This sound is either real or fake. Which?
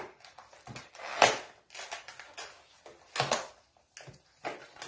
real